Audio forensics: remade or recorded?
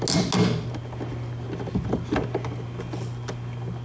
recorded